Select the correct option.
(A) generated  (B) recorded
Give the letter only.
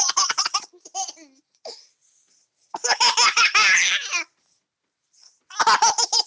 B